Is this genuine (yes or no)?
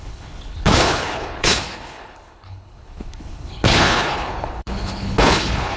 no